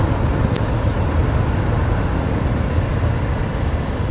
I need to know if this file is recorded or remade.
recorded